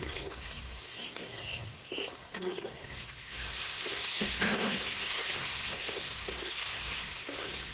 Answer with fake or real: fake